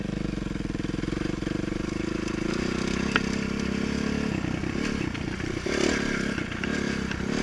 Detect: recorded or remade recorded